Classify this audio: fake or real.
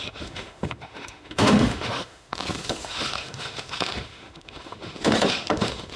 fake